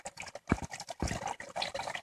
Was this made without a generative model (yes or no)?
yes